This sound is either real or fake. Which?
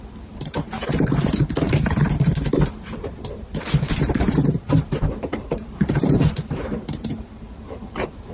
fake